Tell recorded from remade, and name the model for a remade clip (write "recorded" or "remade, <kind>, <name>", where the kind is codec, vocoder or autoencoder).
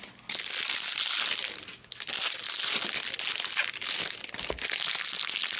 recorded